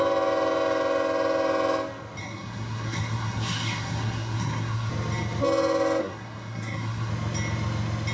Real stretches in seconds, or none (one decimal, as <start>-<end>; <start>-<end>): 0.0-2.2; 4.9-6.0; 7.1-8.1